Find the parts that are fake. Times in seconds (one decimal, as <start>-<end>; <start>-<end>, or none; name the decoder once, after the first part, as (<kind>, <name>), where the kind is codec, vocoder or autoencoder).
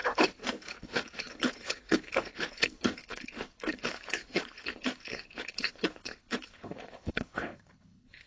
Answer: 0.0-8.3 (codec, HILCodec)